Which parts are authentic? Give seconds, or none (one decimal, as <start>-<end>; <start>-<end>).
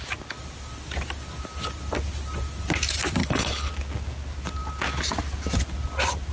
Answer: 0.0-3.2; 3.7-6.3